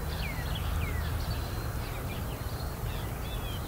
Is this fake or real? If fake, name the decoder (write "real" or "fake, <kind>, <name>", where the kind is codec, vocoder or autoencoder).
real